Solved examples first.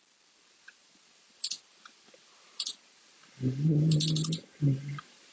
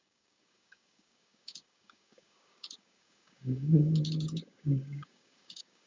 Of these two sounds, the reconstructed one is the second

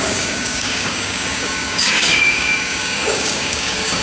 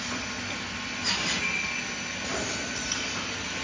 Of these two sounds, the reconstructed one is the first